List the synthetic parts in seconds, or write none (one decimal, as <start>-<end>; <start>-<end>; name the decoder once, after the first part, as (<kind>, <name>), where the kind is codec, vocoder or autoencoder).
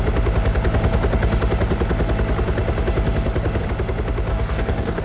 4.3-5.0 (codec, DAC)